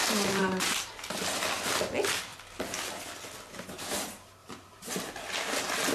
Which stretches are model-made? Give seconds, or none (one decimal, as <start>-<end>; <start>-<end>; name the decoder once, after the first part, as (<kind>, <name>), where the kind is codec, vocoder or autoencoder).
0.0-0.9 (vocoder, BigVGAN v2); 4.4-5.0